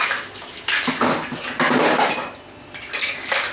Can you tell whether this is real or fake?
real